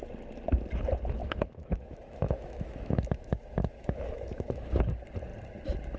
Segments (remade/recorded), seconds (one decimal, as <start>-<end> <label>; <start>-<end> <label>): 0.0-1.2 recorded; 1.2-4.8 remade; 4.8-6.0 recorded